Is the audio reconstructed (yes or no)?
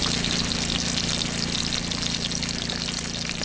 no